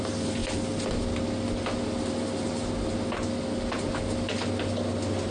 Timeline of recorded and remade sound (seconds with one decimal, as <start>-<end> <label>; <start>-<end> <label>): 0.0-5.3 recorded